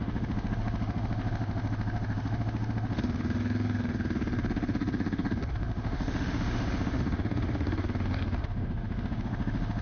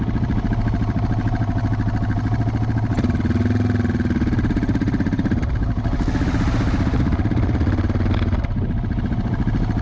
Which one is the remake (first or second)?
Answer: first